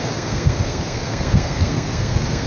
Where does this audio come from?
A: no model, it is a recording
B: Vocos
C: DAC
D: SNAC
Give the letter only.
D